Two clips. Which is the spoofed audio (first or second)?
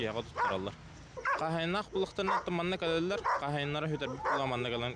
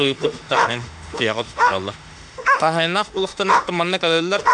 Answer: second